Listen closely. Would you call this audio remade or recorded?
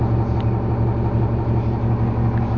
recorded